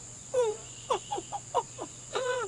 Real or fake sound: fake